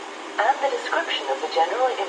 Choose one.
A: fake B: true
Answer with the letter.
B